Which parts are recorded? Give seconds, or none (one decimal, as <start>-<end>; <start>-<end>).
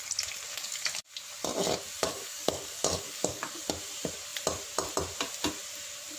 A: 0.0-0.5; 1.1-2.0; 3.6-6.2